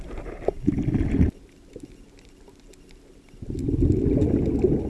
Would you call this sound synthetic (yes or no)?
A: no